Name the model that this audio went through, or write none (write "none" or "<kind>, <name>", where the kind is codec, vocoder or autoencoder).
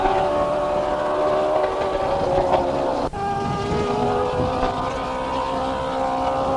none